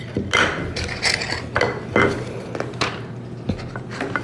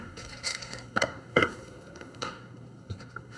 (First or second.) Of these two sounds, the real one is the first